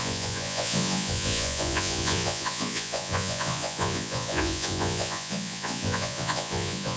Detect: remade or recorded remade